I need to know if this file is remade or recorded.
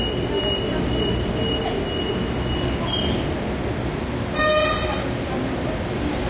recorded